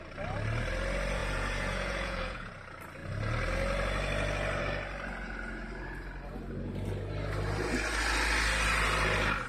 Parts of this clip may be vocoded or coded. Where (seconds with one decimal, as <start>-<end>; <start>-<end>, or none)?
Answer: 1.2-2.5